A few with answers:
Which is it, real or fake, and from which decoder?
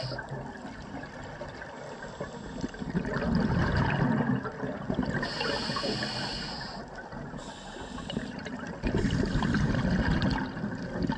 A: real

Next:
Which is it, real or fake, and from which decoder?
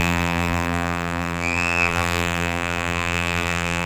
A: fake, vocoder, BigVGAN v2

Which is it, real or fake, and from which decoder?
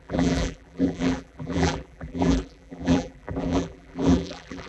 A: fake, vocoder, BigVGAN v2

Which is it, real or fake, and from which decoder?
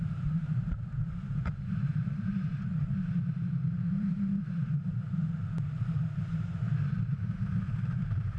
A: fake, vocoder, BigVGAN v2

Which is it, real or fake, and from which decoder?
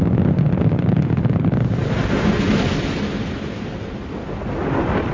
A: real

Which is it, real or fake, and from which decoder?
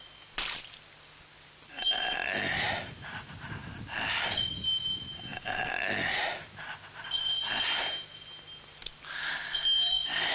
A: real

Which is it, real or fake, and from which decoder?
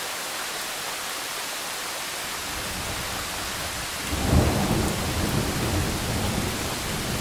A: real